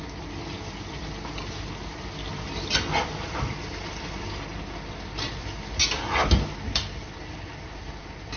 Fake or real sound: real